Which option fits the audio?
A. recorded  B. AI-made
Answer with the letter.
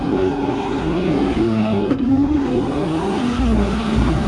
B